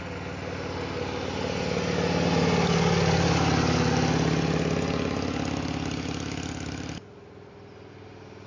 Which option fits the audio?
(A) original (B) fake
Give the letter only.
A